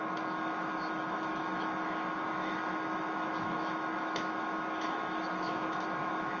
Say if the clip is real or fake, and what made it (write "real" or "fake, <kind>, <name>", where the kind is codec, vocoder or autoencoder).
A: fake, autoencoder, DAC-VAE